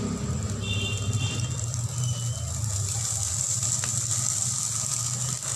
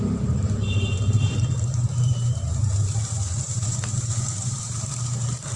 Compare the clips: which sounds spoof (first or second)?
second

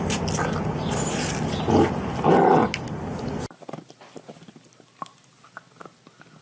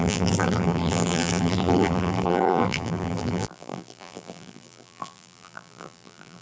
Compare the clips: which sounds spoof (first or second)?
second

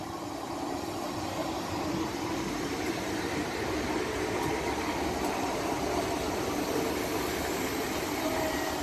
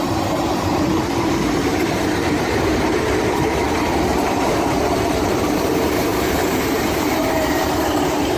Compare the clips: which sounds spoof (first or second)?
second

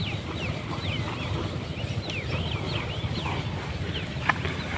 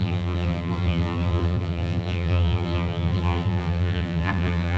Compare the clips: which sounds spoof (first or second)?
second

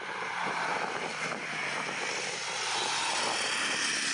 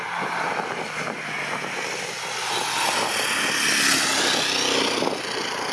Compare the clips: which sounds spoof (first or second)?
first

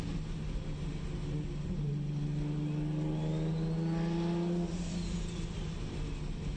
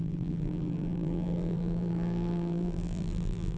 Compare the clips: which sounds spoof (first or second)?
second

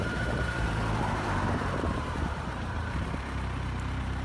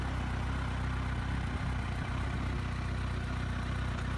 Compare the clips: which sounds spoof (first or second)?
first